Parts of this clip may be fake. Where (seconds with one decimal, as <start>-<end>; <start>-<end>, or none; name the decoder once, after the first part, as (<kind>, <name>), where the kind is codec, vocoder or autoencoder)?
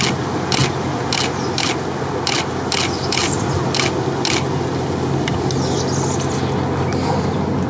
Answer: none